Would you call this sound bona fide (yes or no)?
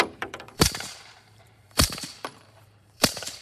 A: no